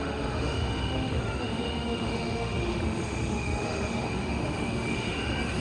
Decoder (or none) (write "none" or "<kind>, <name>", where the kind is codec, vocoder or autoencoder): autoencoder, DAC-VAE